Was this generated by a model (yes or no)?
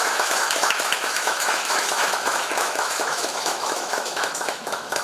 yes